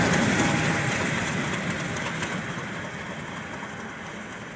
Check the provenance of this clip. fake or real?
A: real